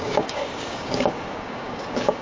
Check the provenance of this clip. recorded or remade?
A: remade